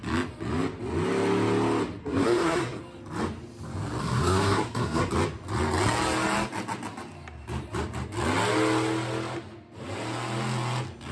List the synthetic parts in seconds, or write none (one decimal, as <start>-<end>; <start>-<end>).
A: 2.0-2.8; 4.0-5.1